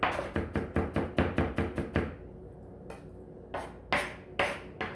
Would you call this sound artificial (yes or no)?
no